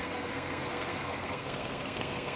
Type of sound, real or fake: fake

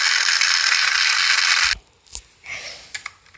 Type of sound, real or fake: real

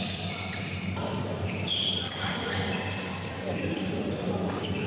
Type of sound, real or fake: real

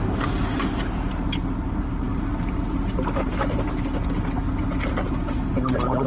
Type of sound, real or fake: real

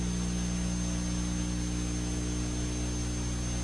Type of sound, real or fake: real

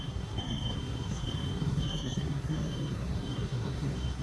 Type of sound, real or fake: fake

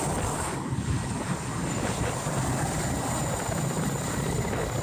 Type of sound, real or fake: real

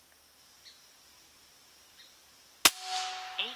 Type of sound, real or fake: real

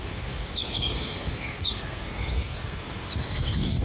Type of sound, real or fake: fake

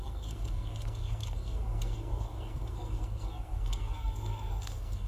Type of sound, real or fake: fake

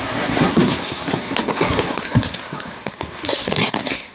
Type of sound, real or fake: fake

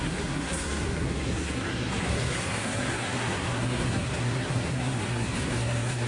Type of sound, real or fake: fake